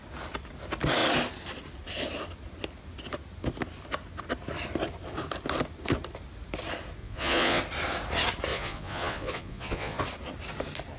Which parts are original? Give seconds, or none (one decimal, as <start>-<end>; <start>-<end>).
0.0-7.0; 7.6-8.5; 10.0-11.0